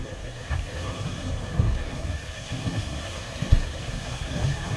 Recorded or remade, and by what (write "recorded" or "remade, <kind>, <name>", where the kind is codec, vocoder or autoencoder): remade, codec, SNAC